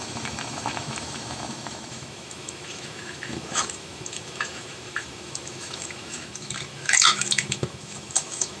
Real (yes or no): no